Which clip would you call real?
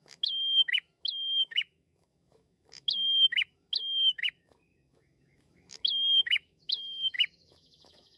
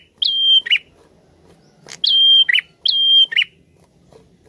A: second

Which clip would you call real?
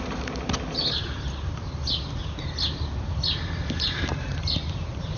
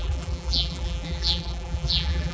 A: first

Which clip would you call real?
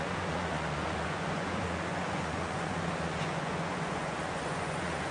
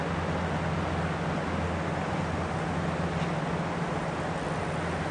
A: second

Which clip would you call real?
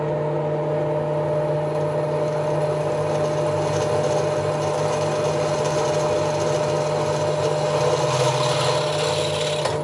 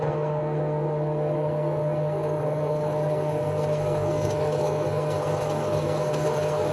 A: first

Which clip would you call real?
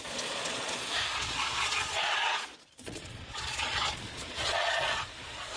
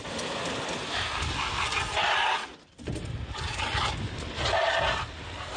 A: second